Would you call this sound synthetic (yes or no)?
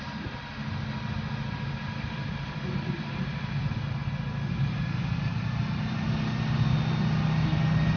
no